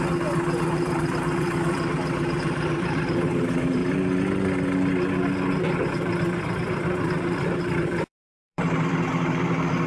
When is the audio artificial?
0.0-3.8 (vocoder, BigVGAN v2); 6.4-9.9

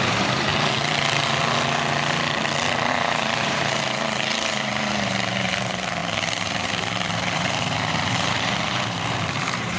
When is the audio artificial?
0.0-0.5 (vocoder, BigVGAN v2); 2.9-9.8

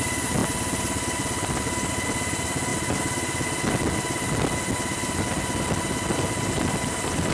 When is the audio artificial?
none

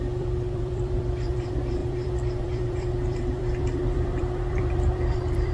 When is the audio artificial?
0.0-5.5 (vocoder, BigVGAN v2)

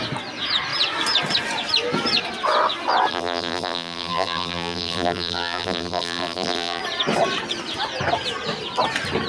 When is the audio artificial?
3.1-6.8 (vocoder, BigVGAN v2)

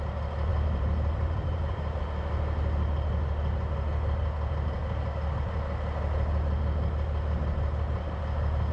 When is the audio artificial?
0.5-2.0 (vocoder, BigVGAN v2)

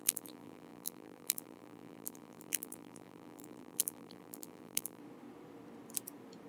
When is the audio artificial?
0.0-5.0 (vocoder, BigVGAN v2)